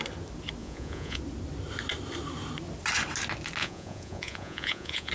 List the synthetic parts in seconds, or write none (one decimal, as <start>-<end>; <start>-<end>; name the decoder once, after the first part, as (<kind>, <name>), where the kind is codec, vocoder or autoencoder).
0.6-1.2 (vocoder, Vocos); 3.6-5.1